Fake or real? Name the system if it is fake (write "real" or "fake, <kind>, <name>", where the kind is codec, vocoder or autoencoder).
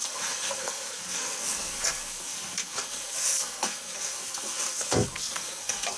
fake, codec, SNAC